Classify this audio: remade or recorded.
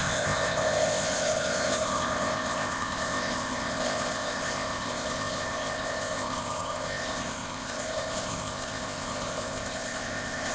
remade